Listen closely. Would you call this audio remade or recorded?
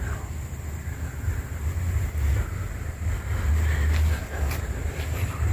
recorded